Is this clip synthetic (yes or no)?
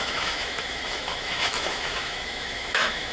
yes